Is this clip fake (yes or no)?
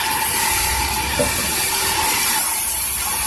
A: no